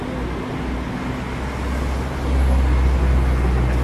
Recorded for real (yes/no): yes